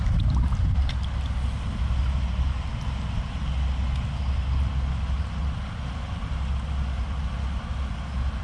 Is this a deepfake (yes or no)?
no